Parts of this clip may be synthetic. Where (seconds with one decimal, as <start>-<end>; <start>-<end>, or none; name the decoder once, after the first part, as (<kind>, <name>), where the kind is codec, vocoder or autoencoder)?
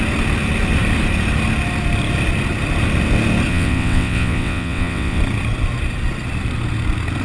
3.5-5.2 (vocoder, WaveNeXt)